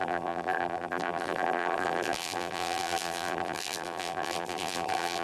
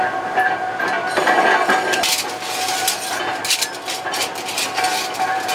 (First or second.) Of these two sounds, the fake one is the first